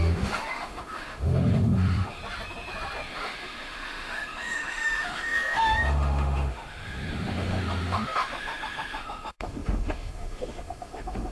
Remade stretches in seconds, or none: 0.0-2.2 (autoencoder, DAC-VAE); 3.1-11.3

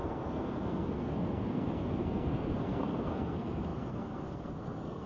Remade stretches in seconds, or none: 0.0-5.1 (codec, SNAC)

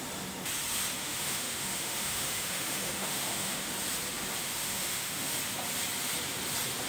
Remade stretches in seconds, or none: 1.0-3.7 (autoencoder, DAC-VAE); 4.4-5.3

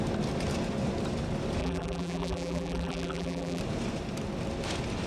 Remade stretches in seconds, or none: 1.6-3.6 (vocoder, BigVGAN v2)

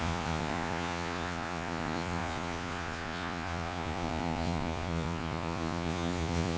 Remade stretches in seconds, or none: 0.0-6.6 (vocoder, Vocos)

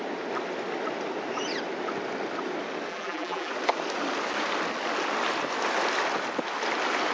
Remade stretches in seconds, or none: 2.9-3.5 (vocoder, BigVGAN v2)

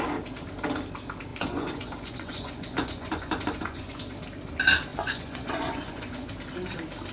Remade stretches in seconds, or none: 1.3-4.0 (vocoder, Vocos); 4.9-6.3

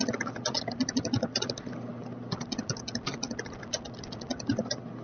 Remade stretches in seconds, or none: none